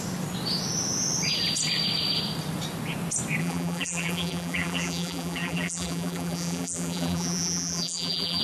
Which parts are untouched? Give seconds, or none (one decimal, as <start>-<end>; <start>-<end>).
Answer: 0.0-3.4